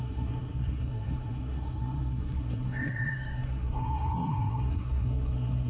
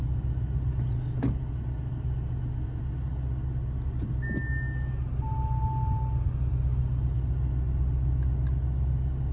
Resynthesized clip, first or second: first